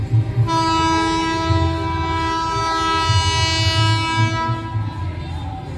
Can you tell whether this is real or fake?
real